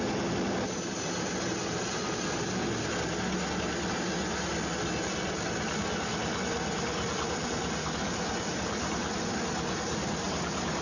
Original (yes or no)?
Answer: yes